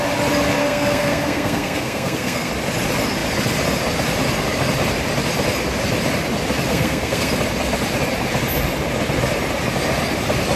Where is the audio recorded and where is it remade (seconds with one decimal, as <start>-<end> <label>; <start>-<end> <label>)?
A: 0.0-0.6 recorded; 0.6-2.5 remade; 2.5-6.7 recorded; 6.7-7.3 remade; 7.3-10.6 recorded